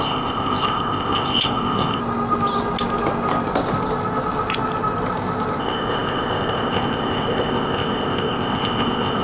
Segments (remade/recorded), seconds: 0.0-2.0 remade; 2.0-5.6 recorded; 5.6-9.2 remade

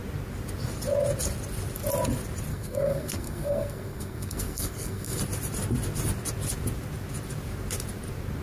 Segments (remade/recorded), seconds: 0.0-2.5 recorded; 2.5-5.2 remade; 5.2-8.4 recorded

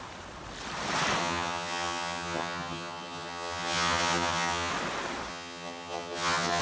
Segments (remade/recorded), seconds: 0.0-1.2 recorded; 1.2-4.7 remade; 4.7-5.3 recorded; 5.3-6.6 remade

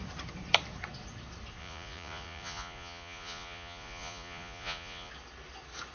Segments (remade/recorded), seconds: 0.0-1.6 recorded; 1.6-5.1 remade; 5.1-5.9 recorded